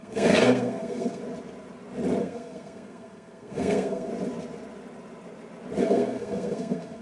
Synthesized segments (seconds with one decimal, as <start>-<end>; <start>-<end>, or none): 0.0-1.2; 2.2-4.1; 5.8-7.0